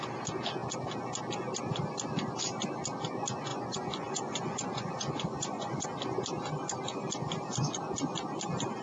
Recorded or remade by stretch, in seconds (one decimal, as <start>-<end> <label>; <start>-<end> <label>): 0.0-3.5 recorded; 3.5-5.8 remade; 5.8-8.8 recorded